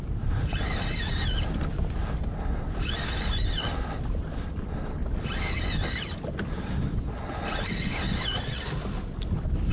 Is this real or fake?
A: real